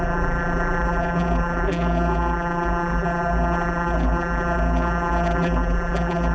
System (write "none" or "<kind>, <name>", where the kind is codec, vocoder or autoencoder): vocoder, BigVGAN v2